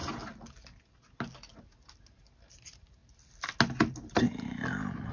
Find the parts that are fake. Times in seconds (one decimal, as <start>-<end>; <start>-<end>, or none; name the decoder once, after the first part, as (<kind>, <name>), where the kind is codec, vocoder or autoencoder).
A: 2.5-3.0 (vocoder, BigVGAN v2)